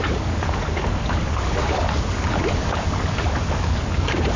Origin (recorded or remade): remade